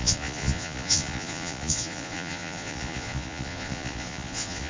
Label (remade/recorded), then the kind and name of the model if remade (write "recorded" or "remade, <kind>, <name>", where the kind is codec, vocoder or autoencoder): remade, vocoder, Vocos